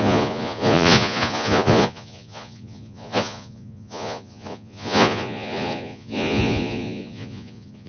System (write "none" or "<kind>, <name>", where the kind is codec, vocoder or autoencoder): vocoder, Vocos